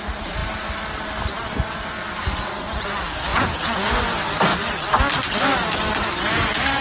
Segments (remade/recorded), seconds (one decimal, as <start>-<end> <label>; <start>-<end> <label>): 0.0-3.3 recorded; 3.3-4.0 remade; 4.0-6.8 recorded